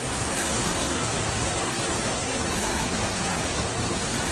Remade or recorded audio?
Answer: remade